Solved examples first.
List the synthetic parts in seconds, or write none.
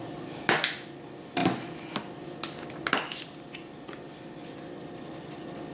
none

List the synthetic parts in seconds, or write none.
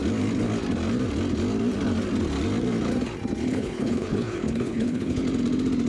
3.5-5.2 (codec, HILCodec)